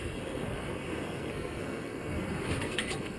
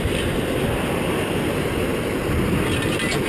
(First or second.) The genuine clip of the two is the second